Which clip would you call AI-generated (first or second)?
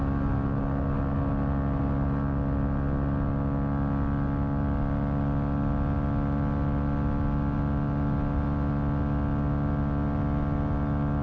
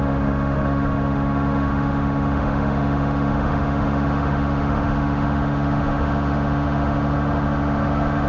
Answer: second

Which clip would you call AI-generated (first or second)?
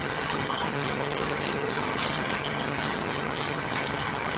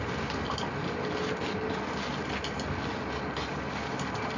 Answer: first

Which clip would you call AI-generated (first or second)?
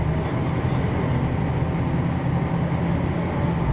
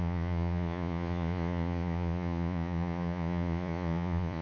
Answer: second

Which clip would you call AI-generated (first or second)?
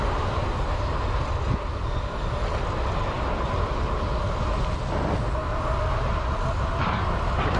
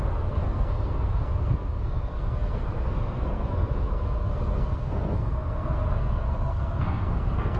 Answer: second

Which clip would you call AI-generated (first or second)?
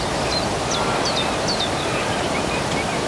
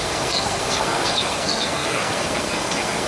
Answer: second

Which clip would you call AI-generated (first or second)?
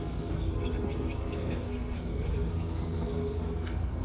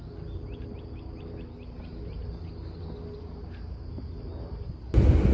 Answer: first